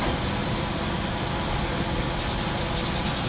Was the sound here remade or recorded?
recorded